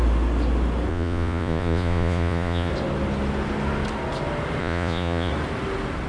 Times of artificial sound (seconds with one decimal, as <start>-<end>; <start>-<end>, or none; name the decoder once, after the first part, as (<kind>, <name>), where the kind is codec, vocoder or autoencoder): 0.9-2.7 (vocoder, Vocos); 4.6-5.3